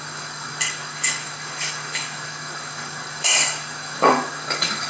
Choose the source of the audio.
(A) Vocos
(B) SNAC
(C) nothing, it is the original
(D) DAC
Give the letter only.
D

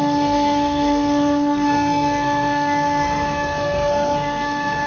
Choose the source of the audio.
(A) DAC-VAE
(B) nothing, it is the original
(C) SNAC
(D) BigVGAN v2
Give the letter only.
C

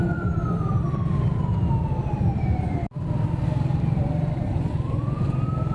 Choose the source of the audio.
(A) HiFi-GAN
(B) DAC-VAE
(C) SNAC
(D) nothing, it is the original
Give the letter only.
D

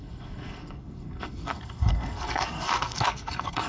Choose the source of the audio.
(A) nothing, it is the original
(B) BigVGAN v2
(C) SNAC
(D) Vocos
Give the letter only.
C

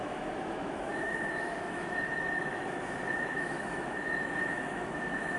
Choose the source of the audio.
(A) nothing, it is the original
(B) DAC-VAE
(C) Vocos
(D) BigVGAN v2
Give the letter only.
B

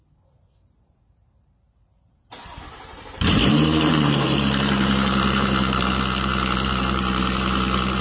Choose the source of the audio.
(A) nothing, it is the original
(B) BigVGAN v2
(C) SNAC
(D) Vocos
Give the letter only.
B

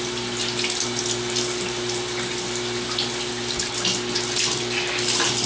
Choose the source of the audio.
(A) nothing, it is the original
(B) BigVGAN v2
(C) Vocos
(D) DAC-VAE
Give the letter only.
A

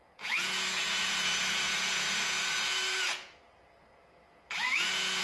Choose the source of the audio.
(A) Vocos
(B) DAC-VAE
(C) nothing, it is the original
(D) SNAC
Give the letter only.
A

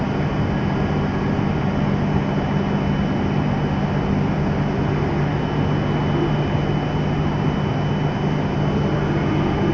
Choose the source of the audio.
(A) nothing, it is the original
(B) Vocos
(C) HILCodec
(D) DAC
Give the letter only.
A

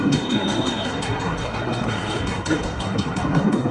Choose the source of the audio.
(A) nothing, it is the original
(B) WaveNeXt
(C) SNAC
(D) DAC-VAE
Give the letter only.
C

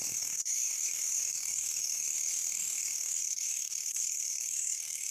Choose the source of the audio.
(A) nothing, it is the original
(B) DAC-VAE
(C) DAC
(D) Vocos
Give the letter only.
C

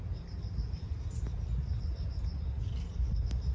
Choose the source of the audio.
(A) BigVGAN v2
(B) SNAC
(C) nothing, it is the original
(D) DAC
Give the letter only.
C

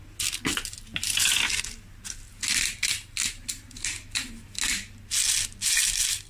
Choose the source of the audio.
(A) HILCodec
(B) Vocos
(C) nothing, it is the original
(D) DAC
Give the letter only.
C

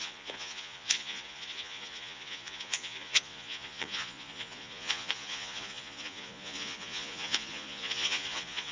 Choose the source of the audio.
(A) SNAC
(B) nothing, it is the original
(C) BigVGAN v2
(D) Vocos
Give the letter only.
D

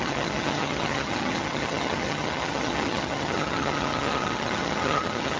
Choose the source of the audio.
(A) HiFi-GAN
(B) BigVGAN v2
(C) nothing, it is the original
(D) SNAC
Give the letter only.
A